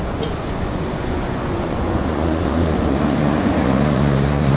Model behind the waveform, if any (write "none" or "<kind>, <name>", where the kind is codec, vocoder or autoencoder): vocoder, Vocos